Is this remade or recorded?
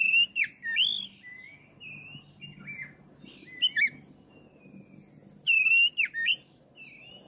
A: recorded